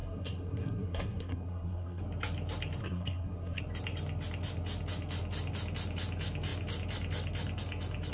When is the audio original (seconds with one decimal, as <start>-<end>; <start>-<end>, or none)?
2.0-2.8; 3.6-8.1